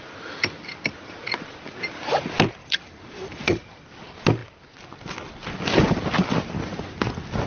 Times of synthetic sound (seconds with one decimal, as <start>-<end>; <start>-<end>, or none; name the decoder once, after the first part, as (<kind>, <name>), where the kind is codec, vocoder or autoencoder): 2.6-3.6 (vocoder, BigVGAN v2)